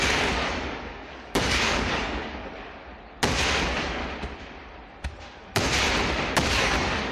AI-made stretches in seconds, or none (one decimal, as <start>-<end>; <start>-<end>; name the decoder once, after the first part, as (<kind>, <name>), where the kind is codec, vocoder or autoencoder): 0.0-2.4 (codec, DAC); 3.6-4.0; 6.5-7.1